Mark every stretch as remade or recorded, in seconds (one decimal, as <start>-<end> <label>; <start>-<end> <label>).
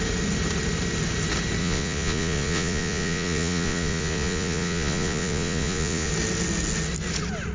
0.0-1.6 recorded; 1.6-6.1 remade; 6.1-7.5 recorded